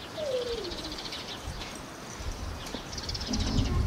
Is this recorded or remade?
remade